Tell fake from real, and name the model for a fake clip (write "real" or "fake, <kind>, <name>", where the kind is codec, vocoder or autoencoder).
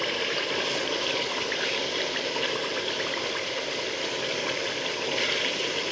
real